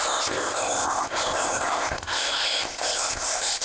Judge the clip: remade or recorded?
remade